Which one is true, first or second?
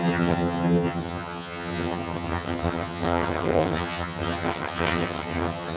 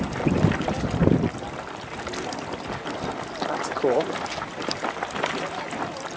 second